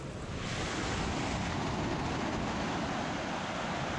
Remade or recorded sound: recorded